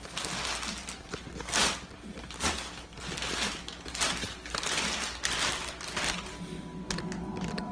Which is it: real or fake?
real